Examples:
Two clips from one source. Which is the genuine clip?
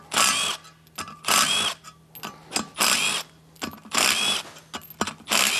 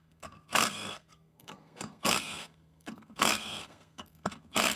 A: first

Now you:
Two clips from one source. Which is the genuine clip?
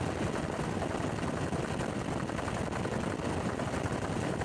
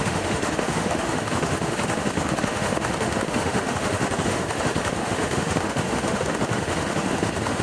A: first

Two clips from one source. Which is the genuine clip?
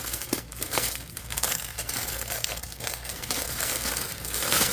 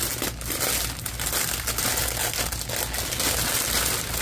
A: second